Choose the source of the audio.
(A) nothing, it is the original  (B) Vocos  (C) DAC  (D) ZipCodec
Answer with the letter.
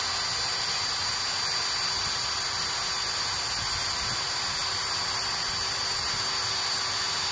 A